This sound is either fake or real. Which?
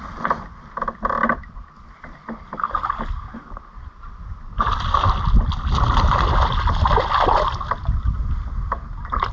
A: real